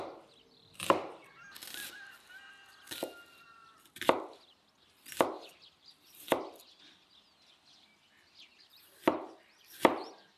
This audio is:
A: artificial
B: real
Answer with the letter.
B